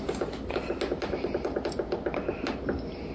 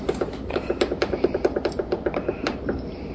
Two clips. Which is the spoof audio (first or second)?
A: second